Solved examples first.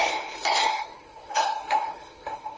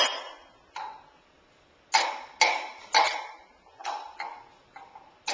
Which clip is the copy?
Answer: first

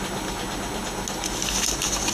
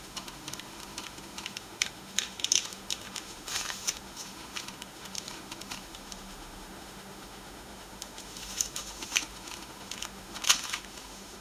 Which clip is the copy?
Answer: second